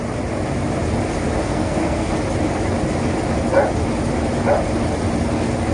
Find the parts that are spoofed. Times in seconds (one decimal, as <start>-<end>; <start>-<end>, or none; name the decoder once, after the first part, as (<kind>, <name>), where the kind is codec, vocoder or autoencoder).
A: 1.4-2.1 (codec, SNAC)